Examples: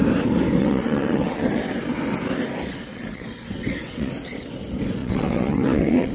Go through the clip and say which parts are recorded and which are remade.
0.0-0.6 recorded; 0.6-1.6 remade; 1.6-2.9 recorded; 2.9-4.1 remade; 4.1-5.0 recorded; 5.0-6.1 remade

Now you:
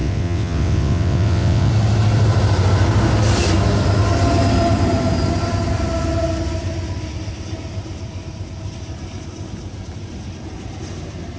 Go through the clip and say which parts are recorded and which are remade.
0.0-1.7 remade; 1.7-11.4 recorded

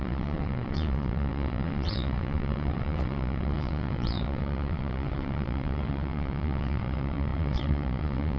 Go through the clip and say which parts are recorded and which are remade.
0.0-8.4 remade

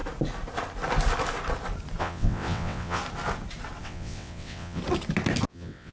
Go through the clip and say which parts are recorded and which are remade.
0.0-2.0 recorded; 2.0-3.0 remade; 3.0-3.8 recorded; 3.8-4.8 remade; 4.8-5.5 recorded; 5.5-5.9 remade